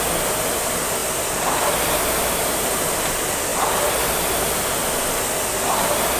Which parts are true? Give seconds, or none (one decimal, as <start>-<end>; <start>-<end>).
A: 0.0-6.2